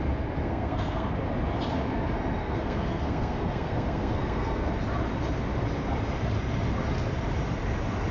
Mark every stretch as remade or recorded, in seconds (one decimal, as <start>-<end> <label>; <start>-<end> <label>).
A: 0.0-0.4 recorded; 0.4-1.1 remade; 1.1-2.4 recorded; 2.4-4.7 remade; 4.7-8.1 recorded